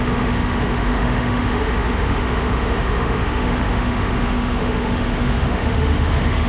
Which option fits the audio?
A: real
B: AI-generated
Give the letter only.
B